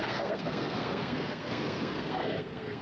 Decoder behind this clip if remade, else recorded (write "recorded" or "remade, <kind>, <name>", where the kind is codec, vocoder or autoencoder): remade, codec, SNAC